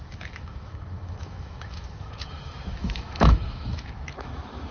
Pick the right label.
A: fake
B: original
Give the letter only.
A